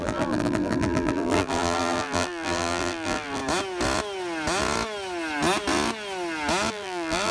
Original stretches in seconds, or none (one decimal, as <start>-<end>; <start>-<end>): 3.4-6.7